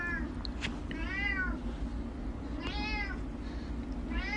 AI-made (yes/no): no